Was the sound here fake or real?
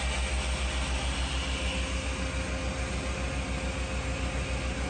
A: real